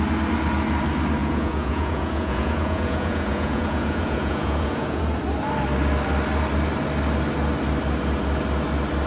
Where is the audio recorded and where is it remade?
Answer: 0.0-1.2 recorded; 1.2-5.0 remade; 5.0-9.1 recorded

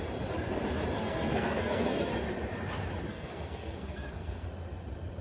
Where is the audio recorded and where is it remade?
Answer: 0.0-1.0 recorded; 1.0-2.1 remade; 2.1-3.1 recorded; 3.1-4.5 remade; 4.5-5.2 recorded